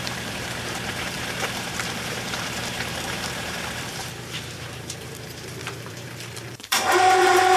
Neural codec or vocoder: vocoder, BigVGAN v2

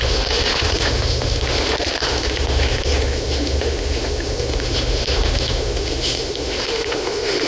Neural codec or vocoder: autoencoder, DAC-VAE